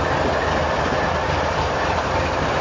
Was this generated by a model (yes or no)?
no